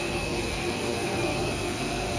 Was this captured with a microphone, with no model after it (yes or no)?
no